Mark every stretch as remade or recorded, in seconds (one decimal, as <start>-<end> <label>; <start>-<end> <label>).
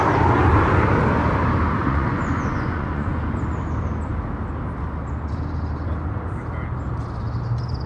0.0-1.8 recorded; 1.8-3.2 remade; 3.2-7.9 recorded